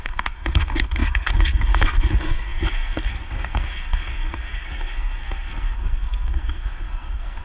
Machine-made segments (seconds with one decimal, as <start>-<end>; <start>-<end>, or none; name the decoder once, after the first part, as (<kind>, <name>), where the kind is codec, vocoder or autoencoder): 0.0-7.4 (codec, SNAC)